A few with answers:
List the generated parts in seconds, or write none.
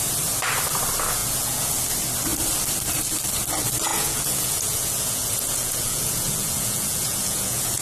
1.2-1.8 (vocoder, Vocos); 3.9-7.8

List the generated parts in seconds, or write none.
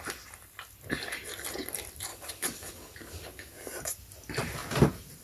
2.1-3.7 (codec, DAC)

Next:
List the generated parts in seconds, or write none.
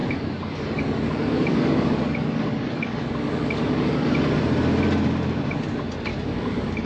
0.0-4.1 (codec, DAC); 6.1-6.9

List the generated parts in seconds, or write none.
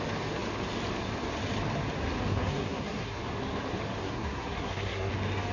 2.3-3.2 (codec, SNAC); 4.0-5.1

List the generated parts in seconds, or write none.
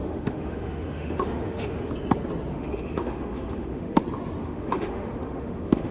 0.0-1.9 (autoencoder, DAC-VAE); 2.5-4.0; 4.4-5.9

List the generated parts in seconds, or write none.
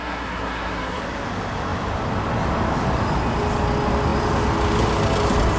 0.0-1.0 (codec, SNAC)